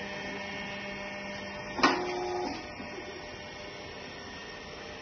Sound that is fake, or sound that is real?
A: real